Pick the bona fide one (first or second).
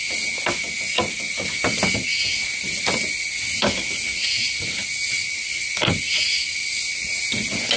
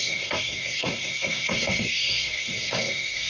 first